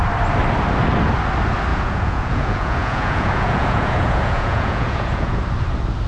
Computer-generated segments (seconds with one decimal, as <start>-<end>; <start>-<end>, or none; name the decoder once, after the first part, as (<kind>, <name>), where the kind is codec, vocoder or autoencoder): 1.7-5.4 (vocoder, Vocos)